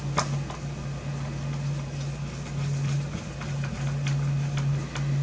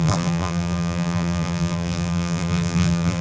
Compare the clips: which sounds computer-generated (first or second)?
second